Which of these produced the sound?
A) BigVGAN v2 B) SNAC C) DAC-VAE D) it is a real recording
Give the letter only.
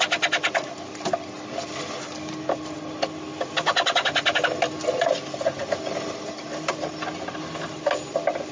D